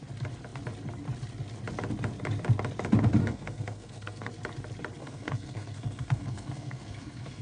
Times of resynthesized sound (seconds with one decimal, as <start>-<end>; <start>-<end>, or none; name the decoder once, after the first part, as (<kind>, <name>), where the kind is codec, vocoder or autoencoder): 3.2-4.3 (codec, SNAC); 5.0-7.4

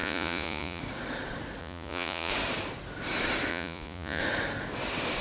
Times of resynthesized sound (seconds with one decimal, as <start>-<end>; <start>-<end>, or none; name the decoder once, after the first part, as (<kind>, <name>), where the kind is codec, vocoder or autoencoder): 0.0-0.8 (vocoder, Vocos); 1.6-2.3; 3.5-4.2

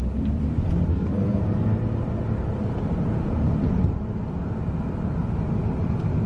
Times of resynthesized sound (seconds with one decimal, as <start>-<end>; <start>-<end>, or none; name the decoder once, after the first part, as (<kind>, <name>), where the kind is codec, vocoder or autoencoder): 0.9-1.4 (codec, SNAC)

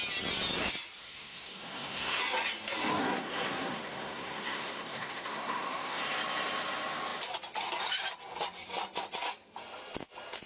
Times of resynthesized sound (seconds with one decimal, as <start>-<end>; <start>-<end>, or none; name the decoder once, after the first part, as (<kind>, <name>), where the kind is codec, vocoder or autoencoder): 1.0-2.2 (codec, SNAC); 3.0-6.0

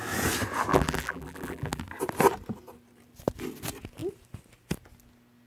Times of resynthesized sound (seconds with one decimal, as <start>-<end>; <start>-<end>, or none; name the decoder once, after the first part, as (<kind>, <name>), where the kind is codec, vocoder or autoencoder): 0.7-1.8 (vocoder, BigVGAN v2)

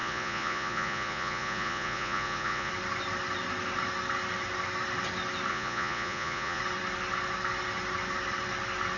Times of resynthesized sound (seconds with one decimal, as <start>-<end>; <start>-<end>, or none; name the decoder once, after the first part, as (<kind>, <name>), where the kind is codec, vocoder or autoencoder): 0.0-2.7 (vocoder, Vocos); 5.5-6.6

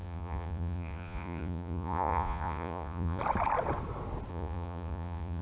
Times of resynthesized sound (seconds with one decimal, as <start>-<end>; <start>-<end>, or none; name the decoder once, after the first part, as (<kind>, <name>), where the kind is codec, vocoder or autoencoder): 0.0-3.2 (vocoder, Vocos); 4.3-5.4